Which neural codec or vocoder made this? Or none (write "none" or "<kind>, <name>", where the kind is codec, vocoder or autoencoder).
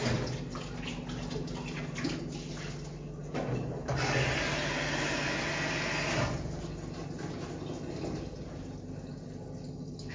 none